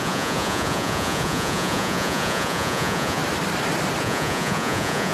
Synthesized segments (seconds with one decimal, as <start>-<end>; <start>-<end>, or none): 0.0-3.2; 4.0-5.1